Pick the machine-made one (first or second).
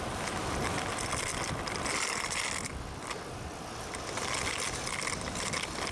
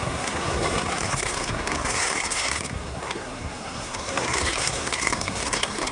second